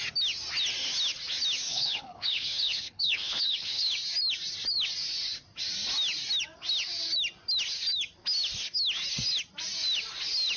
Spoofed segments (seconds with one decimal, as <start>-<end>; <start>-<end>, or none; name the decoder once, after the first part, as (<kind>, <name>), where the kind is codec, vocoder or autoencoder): 1.7-3.9 (codec, HILCodec)